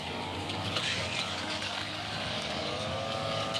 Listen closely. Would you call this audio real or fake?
fake